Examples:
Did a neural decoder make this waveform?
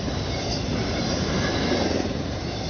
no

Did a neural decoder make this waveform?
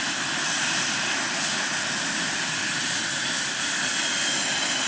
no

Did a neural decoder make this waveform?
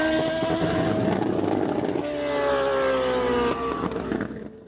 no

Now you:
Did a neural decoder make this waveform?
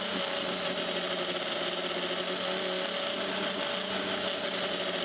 no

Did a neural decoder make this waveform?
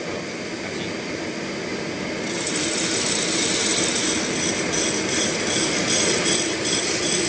no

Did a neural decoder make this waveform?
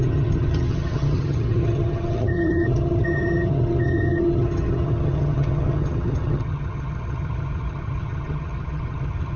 yes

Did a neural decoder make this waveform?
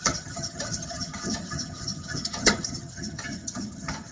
yes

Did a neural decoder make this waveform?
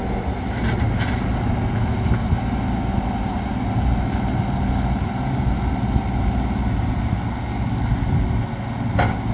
no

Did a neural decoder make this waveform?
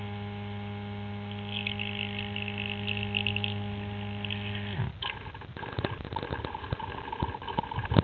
no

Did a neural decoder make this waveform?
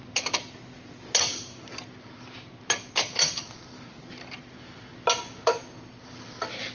no